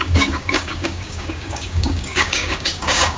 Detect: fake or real fake